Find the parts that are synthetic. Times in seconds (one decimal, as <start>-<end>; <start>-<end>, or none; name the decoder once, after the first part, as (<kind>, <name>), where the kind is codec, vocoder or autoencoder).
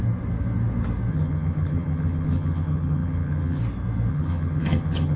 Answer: 1.1-3.6 (vocoder, HiFi-GAN); 4.1-5.2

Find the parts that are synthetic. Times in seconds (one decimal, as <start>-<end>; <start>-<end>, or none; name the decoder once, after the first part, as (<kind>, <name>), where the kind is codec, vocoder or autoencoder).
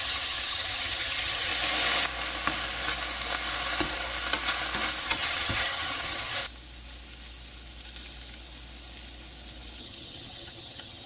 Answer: 0.0-1.5 (vocoder, HiFi-GAN); 5.0-6.4; 9.8-11.1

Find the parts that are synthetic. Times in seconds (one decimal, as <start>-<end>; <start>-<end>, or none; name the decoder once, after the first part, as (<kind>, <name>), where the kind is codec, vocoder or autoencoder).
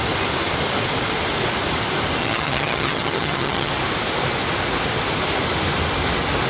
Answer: 2.2-3.7 (vocoder, HiFi-GAN)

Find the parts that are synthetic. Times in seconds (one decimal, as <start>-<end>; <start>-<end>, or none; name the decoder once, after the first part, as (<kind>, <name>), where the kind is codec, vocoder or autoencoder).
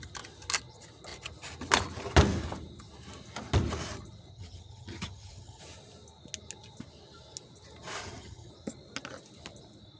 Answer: 4.3-5.6 (vocoder, HiFi-GAN); 8.0-8.5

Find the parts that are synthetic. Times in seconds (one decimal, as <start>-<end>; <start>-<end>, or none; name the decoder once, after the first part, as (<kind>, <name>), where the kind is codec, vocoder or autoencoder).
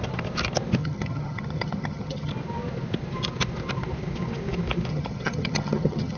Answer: 0.8-2.3 (vocoder, HiFi-GAN); 4.9-6.2